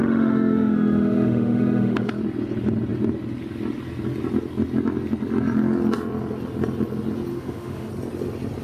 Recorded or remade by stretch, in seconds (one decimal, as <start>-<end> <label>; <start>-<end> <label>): 0.0-2.1 remade; 2.1-7.3 recorded; 7.3-7.9 remade; 7.9-8.6 recorded